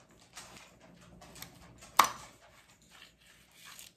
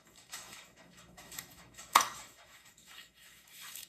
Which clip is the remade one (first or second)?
second